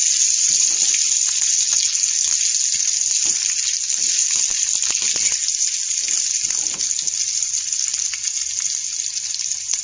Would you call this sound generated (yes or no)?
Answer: no